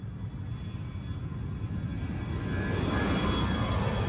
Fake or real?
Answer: real